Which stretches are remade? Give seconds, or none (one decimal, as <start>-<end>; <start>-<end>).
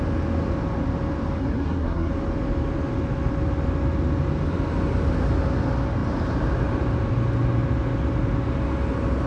1.4-2.1